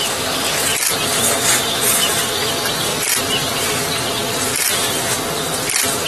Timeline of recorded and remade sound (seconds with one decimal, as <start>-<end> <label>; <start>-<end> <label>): 0.0-6.1 recorded